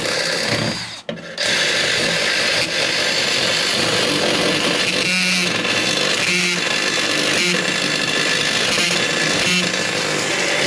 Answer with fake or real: real